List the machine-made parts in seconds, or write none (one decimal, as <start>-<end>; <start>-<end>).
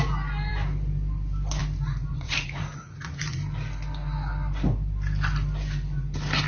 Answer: 2.1-3.4